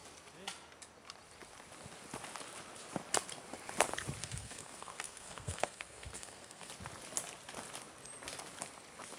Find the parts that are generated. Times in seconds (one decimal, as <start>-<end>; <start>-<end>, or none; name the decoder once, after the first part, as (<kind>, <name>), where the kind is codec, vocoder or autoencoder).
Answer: 4.2-6.7 (codec, SNAC)

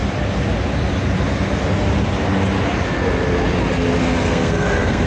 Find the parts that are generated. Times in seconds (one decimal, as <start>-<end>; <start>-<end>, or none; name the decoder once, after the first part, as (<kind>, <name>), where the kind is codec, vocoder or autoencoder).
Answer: 4.0-5.1 (codec, SNAC)

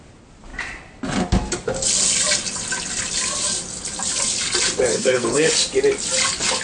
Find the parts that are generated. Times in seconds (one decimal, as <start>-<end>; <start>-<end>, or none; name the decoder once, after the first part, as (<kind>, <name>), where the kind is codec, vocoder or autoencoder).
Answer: 4.9-5.5 (codec, SNAC)